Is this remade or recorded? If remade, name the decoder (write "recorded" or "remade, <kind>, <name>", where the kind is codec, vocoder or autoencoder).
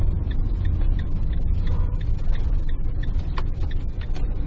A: recorded